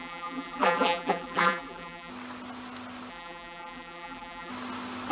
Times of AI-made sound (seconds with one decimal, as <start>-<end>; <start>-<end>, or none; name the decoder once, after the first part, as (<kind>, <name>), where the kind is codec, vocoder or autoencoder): 0.0-2.1 (vocoder, BigVGAN v2); 3.1-4.5